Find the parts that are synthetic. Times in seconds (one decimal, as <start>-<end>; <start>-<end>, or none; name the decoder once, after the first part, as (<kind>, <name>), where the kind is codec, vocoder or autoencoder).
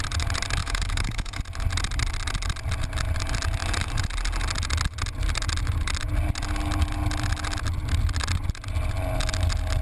0.6-1.4 (autoencoder, DAC-VAE)